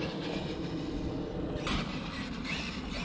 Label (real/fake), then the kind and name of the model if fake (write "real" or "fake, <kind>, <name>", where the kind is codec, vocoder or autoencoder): real